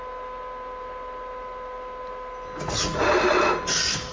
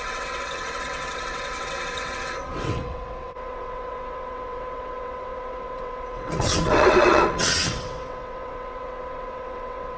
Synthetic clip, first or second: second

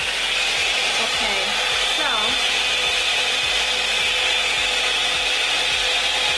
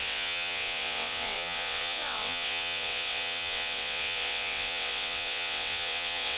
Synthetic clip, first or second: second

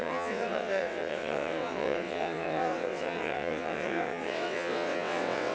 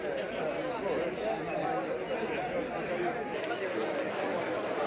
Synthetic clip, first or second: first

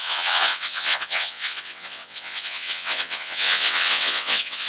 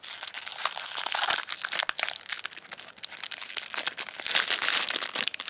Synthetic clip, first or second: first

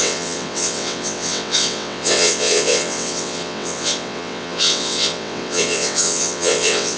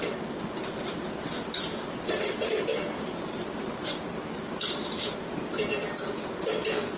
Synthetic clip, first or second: first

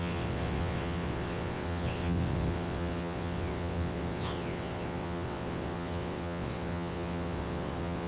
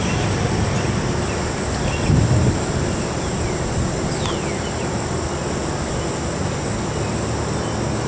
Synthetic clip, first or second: first